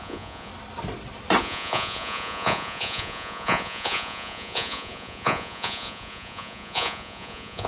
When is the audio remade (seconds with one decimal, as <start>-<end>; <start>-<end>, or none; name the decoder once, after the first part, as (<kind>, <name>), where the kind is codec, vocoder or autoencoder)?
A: 0.0-0.5 (vocoder, Vocos); 1.4-7.7